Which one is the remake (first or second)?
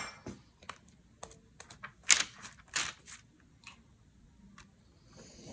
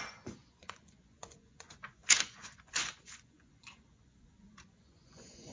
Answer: second